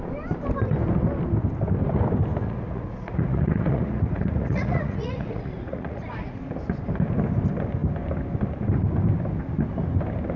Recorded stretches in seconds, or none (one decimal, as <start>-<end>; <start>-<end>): 0.0-2.4; 6.4-10.4